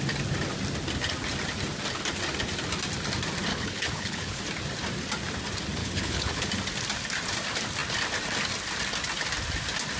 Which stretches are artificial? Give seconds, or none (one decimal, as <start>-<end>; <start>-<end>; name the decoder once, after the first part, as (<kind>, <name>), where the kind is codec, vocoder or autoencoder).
3.5-4.4 (codec, HILCodec); 5.8-6.5